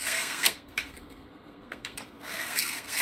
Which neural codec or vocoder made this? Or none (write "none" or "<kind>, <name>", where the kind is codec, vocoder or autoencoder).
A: codec, SNAC